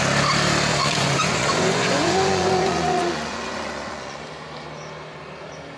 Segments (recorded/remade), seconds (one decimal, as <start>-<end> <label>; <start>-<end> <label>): 0.0-0.7 recorded; 0.7-4.2 remade; 4.2-5.8 recorded